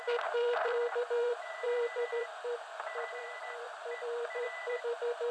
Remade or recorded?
remade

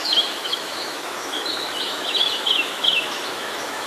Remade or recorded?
remade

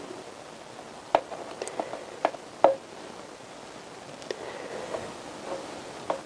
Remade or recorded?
recorded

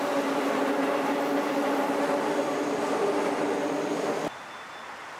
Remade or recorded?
recorded